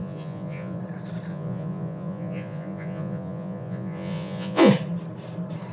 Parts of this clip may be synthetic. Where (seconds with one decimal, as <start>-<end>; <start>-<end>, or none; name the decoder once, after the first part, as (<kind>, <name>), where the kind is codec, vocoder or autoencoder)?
0.0-0.8 (vocoder, Vocos); 1.3-4.7